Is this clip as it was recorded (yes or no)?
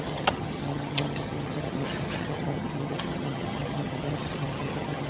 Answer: no